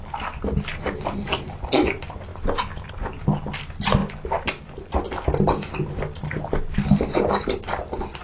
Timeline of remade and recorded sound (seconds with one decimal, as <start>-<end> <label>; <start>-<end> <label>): 0.0-8.2 recorded